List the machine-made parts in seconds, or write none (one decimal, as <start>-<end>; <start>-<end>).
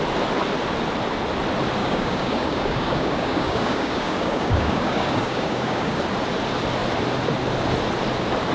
1.8-6.0